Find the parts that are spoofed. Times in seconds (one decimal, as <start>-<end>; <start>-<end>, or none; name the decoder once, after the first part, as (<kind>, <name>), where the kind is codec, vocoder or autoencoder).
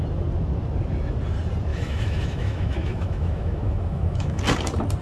1.7-4.4 (autoencoder, DAC-VAE)